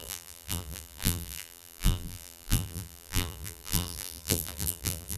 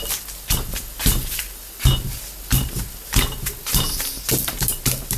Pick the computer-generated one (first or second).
first